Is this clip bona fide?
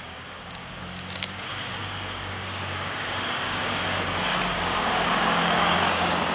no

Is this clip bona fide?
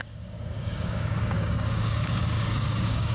no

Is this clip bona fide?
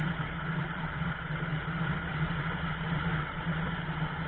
yes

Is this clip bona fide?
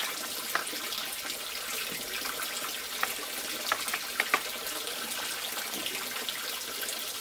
yes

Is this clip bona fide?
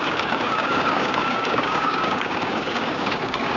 no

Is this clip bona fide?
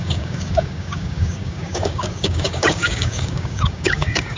no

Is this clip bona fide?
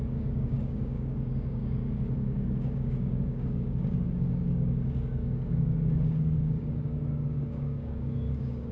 no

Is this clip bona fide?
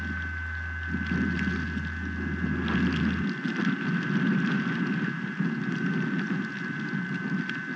yes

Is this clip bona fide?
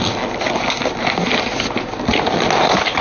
yes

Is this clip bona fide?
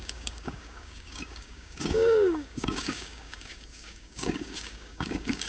no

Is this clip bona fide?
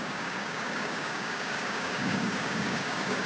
no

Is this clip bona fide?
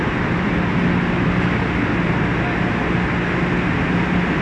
yes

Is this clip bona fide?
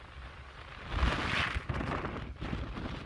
yes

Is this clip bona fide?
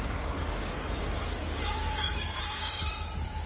no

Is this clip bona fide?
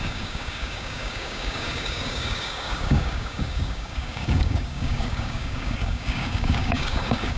no